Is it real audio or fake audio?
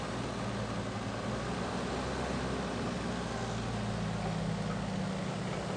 real